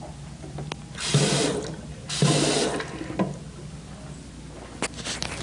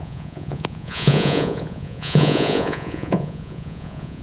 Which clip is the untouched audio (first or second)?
first